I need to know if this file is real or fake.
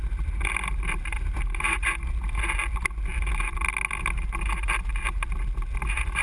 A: real